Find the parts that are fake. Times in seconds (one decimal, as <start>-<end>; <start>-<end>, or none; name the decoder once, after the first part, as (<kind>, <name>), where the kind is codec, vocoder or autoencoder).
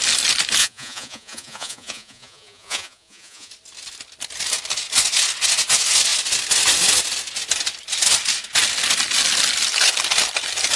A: 0.6-3.5 (vocoder, Vocos)